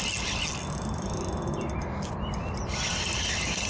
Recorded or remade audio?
recorded